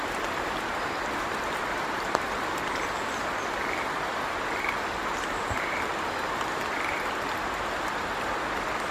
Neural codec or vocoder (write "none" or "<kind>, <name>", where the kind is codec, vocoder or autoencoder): none